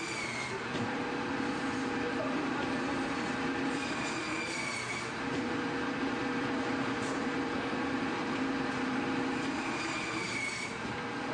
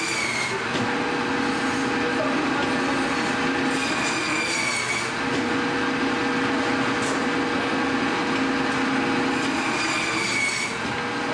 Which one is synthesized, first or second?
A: first